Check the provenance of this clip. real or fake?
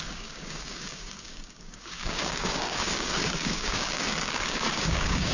fake